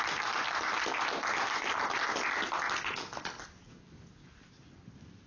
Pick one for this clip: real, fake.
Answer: real